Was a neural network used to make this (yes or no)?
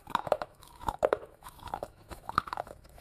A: yes